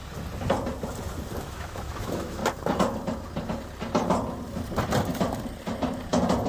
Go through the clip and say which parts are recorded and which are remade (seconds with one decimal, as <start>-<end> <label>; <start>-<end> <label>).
0.0-1.4 recorded; 1.4-2.4 remade; 2.4-6.5 recorded